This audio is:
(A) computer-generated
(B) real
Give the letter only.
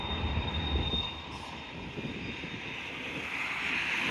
B